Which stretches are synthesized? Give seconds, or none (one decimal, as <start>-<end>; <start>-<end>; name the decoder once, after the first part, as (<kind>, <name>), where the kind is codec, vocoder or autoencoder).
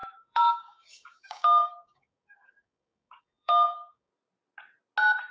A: 0.0-4.1 (codec, DAC)